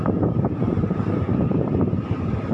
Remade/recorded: remade